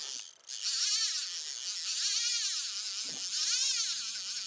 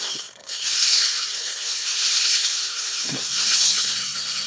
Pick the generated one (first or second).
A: second